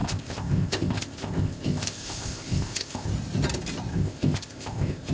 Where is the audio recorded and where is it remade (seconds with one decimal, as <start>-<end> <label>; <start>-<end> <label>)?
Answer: 0.0-3.1 remade; 3.1-3.9 recorded; 3.9-5.1 remade